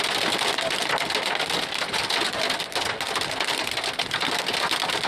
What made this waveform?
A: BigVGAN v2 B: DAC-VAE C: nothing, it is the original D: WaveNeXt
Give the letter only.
C